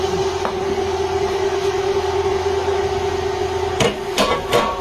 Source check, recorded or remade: recorded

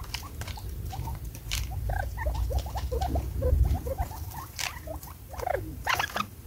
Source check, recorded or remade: remade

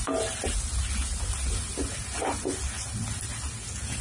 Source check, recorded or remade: recorded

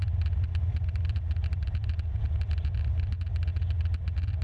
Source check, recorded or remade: recorded